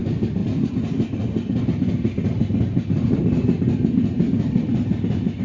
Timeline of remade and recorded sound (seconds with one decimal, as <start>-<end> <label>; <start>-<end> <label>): 0.0-5.4 recorded